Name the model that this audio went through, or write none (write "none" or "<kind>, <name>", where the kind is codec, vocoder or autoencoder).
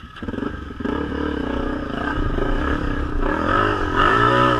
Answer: codec, DAC